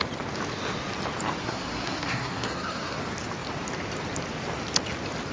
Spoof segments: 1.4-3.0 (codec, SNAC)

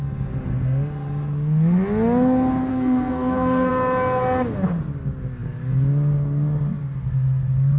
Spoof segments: 2.7-3.7 (codec, SNAC)